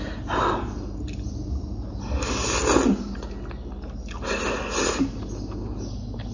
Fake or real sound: real